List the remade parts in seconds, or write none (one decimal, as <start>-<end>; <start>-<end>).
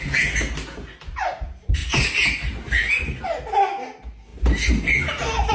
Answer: 1.8-3.2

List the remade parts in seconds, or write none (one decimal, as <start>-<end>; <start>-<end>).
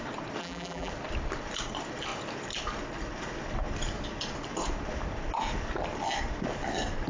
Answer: 0.4-0.9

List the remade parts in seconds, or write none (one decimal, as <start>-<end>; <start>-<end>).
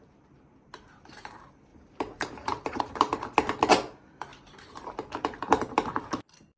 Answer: 1.7-2.8